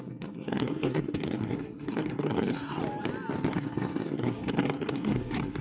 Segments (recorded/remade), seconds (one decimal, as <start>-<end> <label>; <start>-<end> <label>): 0.0-2.8 remade; 2.8-3.5 recorded; 3.5-5.6 remade